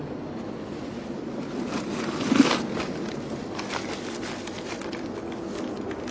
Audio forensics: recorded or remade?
recorded